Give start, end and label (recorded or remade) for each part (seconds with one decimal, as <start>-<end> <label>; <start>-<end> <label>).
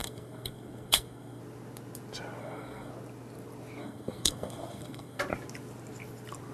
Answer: 0.0-1.4 remade; 1.4-2.4 recorded; 2.4-2.9 remade; 2.9-3.8 recorded; 3.8-5.2 remade; 5.2-6.5 recorded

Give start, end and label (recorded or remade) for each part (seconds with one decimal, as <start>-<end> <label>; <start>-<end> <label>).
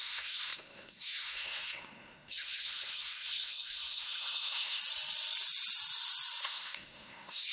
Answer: 0.0-4.8 remade; 4.8-6.4 recorded; 6.4-7.5 remade